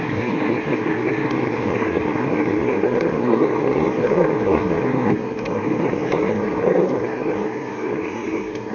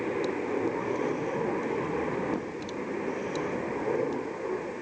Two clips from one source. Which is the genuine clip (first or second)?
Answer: second